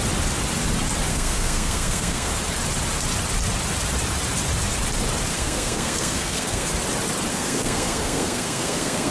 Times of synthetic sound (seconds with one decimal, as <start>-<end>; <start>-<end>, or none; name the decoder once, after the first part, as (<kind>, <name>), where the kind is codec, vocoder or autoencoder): 1.1-2.3 (codec, SNAC); 5.3-6.7; 7.3-9.1